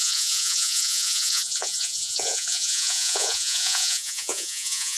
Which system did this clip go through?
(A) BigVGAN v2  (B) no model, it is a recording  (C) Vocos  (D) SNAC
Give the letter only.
C